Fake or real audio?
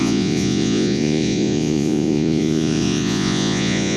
fake